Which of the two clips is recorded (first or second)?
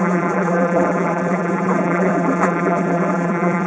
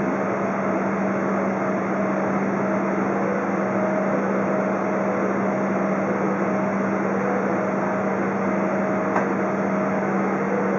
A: second